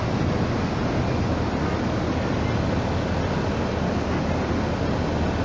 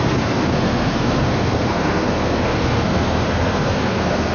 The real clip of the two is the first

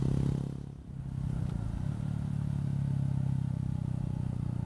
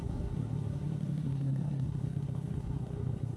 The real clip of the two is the first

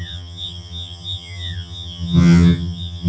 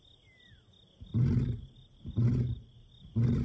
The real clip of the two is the second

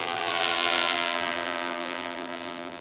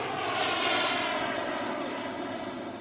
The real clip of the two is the second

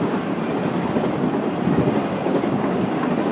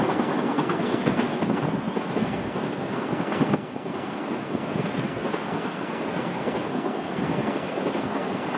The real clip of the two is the first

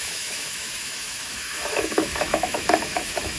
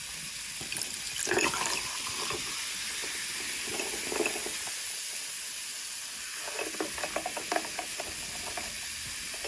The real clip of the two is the second